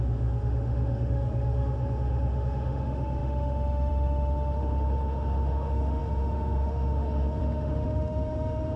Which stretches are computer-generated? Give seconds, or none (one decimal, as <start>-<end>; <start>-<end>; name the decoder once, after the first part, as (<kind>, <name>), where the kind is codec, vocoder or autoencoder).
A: 0.0-8.8 (autoencoder, DAC-VAE)